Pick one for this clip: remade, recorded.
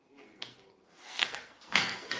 remade